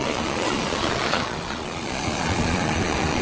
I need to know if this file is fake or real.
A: fake